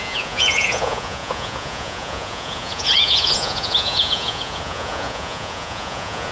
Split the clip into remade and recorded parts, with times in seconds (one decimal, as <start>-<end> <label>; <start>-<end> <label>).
0.0-6.3 remade